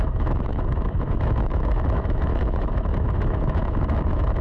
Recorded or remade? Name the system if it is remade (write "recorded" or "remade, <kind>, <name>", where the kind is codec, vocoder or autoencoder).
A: remade, autoencoder, DAC-VAE